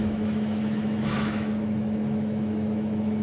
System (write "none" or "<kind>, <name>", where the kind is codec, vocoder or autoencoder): autoencoder, DAC-VAE